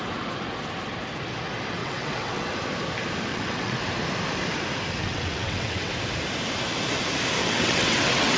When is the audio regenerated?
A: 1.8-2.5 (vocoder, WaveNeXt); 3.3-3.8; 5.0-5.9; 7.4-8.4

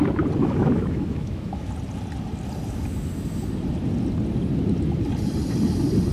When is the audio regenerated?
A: 0.4-1.7 (autoencoder, DAC-VAE)

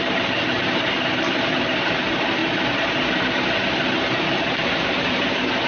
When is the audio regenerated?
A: 0.0-2.4 (vocoder, BigVGAN v2); 4.4-5.7

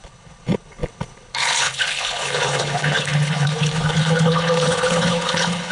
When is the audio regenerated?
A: 0.0-5.7 (codec, HILCodec)

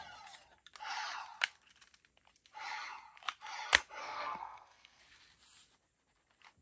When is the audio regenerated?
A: 4.0-5.0 (codec, SNAC)

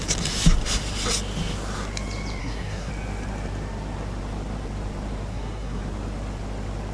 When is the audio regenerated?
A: 2.4-2.9 (codec, SNAC); 5.3-5.8

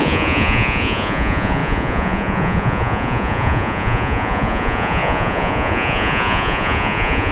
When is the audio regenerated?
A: 0.0-7.3 (vocoder, Vocos)